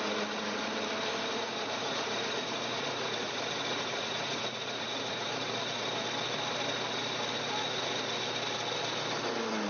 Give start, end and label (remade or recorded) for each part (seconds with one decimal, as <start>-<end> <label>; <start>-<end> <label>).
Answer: 0.0-1.1 recorded; 1.1-5.3 remade; 5.3-9.7 recorded